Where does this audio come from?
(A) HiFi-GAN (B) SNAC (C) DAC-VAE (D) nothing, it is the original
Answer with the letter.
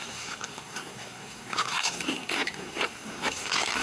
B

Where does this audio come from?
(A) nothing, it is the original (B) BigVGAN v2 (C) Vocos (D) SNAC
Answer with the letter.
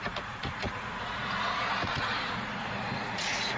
C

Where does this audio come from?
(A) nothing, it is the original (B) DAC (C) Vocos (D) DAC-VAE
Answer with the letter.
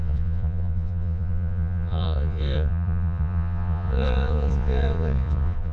C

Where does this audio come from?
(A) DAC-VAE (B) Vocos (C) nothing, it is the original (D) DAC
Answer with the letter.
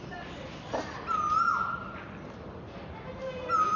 C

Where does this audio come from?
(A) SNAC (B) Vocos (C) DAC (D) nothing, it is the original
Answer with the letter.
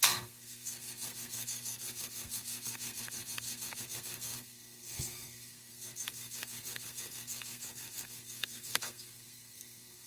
A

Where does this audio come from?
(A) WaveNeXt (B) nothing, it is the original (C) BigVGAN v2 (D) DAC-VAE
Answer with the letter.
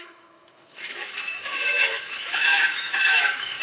D